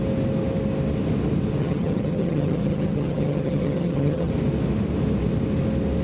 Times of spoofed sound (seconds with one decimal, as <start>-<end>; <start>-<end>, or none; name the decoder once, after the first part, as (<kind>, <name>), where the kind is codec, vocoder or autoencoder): 1.6-4.3 (vocoder, HiFi-GAN)